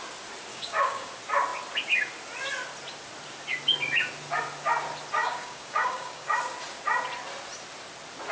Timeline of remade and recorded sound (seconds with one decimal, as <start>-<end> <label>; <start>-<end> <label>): 0.0-0.5 recorded; 0.5-1.1 remade; 1.1-5.2 recorded; 5.2-6.4 remade; 6.4-8.3 recorded